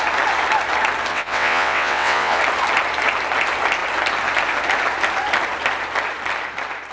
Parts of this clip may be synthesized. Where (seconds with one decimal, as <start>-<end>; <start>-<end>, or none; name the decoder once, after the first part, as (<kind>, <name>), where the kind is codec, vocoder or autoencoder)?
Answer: 1.1-2.4 (vocoder, WaveNeXt)